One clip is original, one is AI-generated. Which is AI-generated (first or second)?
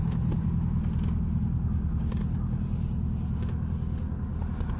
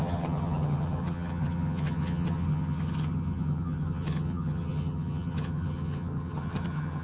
second